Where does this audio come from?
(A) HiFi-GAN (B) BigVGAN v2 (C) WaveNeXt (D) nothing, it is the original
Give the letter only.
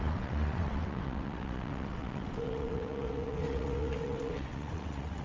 C